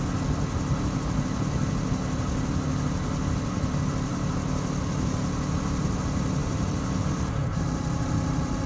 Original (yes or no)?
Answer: yes